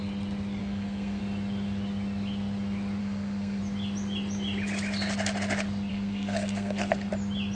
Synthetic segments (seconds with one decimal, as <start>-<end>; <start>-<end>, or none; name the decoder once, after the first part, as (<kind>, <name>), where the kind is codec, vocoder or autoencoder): 0.6-1.2 (codec, SNAC); 3.0-3.6; 5.9-7.1